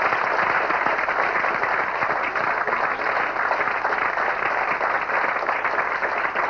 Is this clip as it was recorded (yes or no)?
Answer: yes